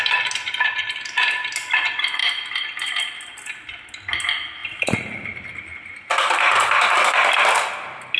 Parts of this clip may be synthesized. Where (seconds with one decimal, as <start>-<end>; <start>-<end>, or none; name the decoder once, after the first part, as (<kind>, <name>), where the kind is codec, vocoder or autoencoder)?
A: 4.6-7.1 (vocoder, BigVGAN v2)